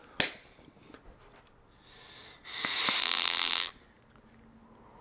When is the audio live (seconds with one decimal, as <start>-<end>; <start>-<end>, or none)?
0.0-3.0; 3.7-5.0